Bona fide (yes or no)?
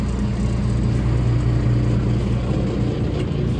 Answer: yes